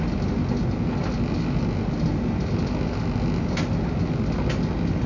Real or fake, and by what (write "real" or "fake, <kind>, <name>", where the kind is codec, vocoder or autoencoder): real